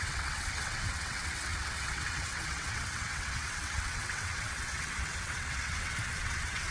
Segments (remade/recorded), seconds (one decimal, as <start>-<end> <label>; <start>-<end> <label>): 0.0-6.7 remade